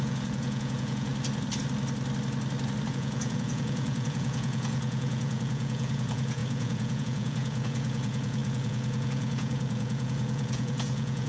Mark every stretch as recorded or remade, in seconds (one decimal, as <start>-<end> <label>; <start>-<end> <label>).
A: 0.0-1.1 remade; 1.1-2.9 recorded; 2.9-11.3 remade